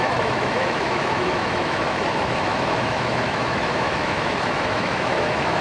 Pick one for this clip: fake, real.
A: fake